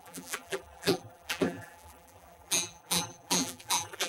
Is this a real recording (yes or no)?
no